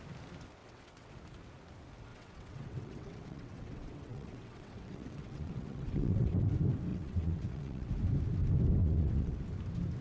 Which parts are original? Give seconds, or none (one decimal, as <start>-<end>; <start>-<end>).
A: 0.0-0.6; 1.1-2.1; 6.5-6.9; 7.9-8.8; 9.4-10.0